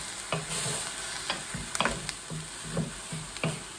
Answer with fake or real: real